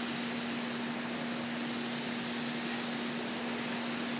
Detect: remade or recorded recorded